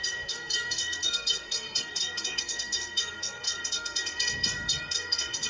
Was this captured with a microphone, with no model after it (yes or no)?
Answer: no